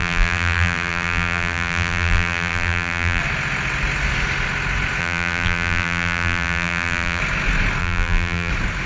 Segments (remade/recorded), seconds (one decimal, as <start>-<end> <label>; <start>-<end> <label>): 0.0-3.2 remade; 3.2-5.0 recorded; 5.0-7.2 remade; 7.2-7.8 recorded; 7.8-8.5 remade; 8.5-8.9 recorded